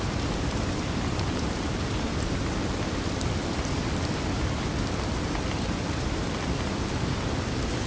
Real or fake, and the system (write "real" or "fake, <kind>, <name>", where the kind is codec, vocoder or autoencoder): fake, vocoder, BigVGAN v2